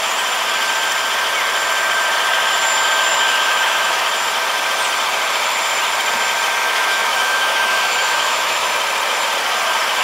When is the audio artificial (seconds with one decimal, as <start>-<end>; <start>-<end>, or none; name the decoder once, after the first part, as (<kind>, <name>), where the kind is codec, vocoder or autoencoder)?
3.1-4.0 (autoencoder, DAC-VAE); 6.6-8.7